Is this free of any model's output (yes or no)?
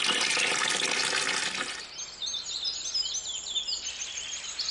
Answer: yes